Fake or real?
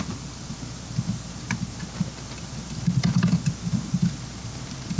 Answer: fake